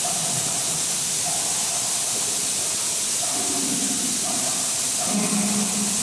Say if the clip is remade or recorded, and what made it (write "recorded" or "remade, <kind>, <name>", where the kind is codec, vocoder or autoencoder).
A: recorded